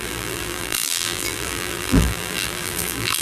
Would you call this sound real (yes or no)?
no